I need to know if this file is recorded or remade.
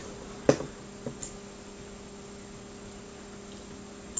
recorded